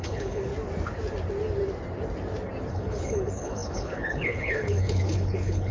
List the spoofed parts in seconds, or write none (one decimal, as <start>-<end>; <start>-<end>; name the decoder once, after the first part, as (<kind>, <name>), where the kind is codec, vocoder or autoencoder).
0.0-0.5 (codec, HILCodec); 2.7-5.7